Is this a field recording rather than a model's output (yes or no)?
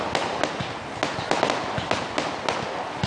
yes